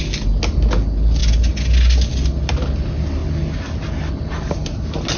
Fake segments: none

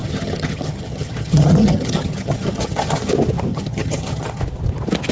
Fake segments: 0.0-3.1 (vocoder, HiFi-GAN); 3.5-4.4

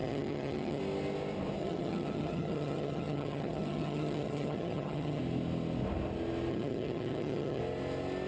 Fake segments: 0.0-0.8 (vocoder, HiFi-GAN); 1.6-5.2; 6.5-7.6

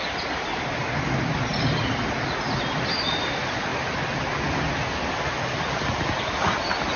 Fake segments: none